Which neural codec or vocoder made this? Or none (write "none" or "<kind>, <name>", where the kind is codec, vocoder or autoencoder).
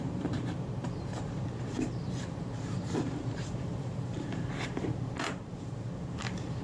vocoder, BigVGAN v2